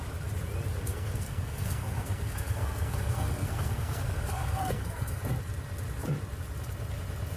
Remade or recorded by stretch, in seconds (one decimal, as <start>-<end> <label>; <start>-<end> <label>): 0.0-0.8 recorded; 0.8-5.2 remade; 5.2-7.4 recorded